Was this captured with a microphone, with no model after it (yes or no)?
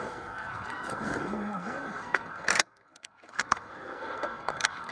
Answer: no